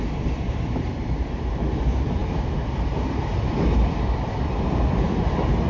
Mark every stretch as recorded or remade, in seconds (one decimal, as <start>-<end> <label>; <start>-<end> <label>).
0.0-5.7 recorded